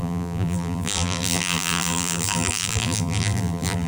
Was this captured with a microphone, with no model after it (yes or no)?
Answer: no